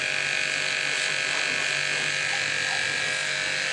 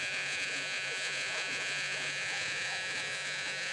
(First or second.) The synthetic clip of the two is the second